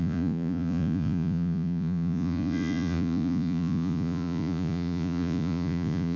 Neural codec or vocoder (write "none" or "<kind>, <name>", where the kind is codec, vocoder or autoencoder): vocoder, Vocos